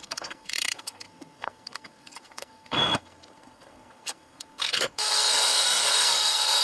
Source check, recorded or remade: remade